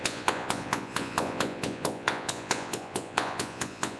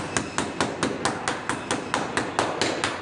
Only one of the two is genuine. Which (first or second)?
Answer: second